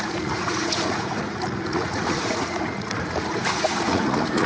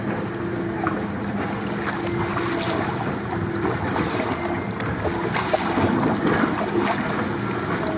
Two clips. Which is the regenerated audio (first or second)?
first